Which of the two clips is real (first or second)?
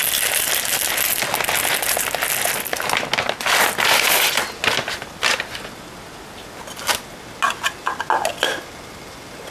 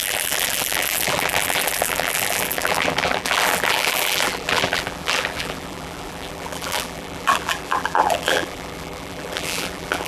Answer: first